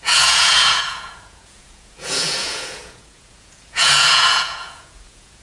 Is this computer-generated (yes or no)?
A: yes